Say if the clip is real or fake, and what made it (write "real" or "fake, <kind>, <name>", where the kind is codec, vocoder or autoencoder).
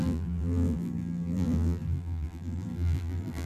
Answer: fake, vocoder, BigVGAN v2